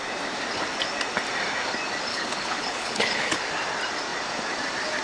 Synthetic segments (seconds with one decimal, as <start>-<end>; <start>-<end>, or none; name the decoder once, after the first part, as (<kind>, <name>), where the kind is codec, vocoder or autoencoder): 2.1-3.4 (codec, HILCodec)